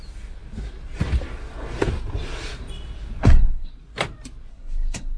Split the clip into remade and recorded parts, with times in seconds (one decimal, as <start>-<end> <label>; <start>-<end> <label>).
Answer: 0.0-3.2 recorded; 3.2-3.7 remade; 3.7-4.5 recorded; 4.5-5.2 remade